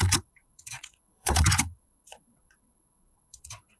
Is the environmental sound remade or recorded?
remade